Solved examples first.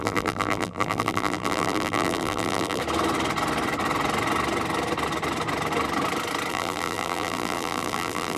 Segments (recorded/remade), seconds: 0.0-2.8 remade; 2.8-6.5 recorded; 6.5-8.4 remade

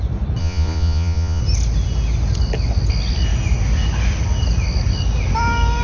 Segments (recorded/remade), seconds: 0.0-0.4 recorded; 0.4-1.4 remade; 1.4-5.8 recorded

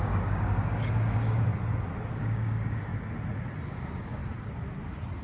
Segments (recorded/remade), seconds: 0.0-1.5 remade; 1.5-2.1 recorded; 2.1-2.9 remade; 2.9-3.7 recorded; 3.7-4.2 remade; 4.2-5.2 recorded

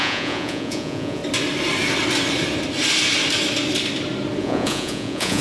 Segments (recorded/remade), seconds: 0.0-1.2 remade; 1.2-4.4 recorded; 4.4-5.4 remade